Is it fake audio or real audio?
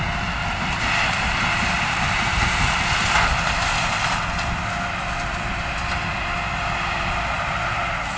real